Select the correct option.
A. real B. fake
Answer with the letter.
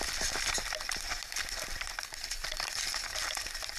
A